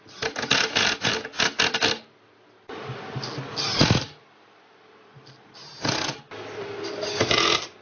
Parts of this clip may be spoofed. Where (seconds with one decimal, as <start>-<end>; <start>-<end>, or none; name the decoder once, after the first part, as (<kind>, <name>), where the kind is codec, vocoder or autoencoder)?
none